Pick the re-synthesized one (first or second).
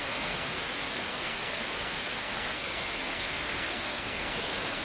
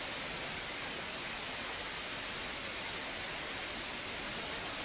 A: first